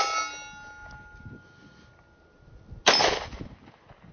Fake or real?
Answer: real